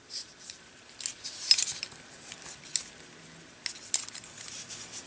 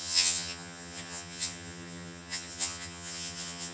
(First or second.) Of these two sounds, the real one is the first